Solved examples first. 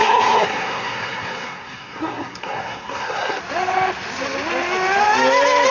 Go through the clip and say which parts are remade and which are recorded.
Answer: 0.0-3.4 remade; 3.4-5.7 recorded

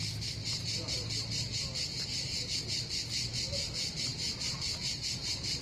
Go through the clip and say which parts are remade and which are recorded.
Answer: 0.0-5.6 recorded